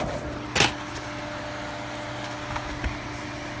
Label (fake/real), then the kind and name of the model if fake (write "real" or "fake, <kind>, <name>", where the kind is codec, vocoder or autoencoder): real